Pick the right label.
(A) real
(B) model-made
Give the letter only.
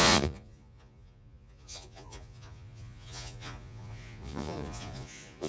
B